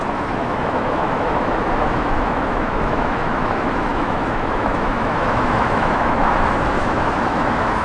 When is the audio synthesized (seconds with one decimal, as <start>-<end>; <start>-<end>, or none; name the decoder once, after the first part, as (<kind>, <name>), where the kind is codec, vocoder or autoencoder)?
0.0-7.8 (autoencoder, DAC-VAE)